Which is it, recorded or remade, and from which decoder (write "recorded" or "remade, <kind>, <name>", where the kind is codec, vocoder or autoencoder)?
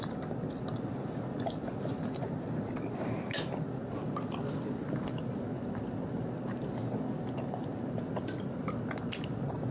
recorded